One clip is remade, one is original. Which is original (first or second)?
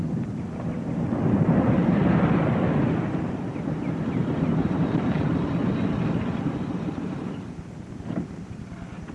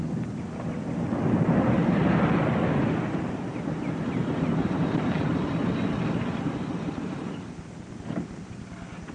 second